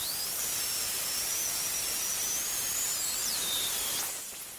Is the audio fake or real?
real